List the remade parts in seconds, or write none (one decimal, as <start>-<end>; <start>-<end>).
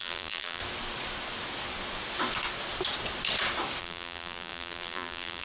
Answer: 0.0-0.6; 3.8-5.4